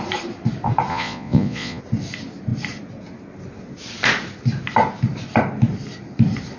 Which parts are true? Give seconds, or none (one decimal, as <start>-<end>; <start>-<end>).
0.0-0.9; 1.8-6.6